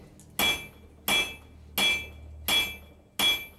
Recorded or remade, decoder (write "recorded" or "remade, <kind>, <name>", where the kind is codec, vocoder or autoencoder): recorded